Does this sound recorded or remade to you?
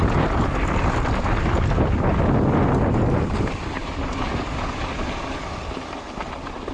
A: recorded